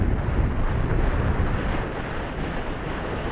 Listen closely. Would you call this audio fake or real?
real